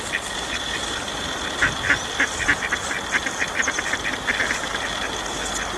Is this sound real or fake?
real